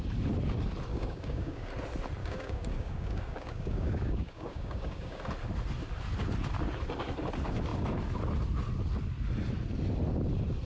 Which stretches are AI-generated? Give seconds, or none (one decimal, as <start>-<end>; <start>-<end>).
0.9-1.7; 2.2-5.2